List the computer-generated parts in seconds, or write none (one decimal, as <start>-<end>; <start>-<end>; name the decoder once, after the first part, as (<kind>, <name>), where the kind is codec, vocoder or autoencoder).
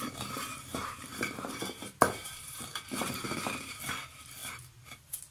0.7-3.8 (vocoder, BigVGAN v2)